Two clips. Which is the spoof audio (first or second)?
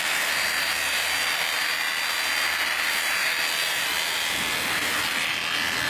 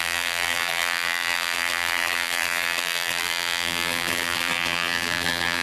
second